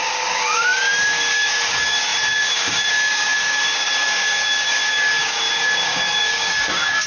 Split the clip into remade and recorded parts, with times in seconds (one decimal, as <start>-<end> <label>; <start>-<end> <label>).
0.0-7.1 remade